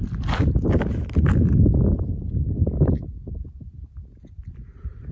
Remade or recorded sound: recorded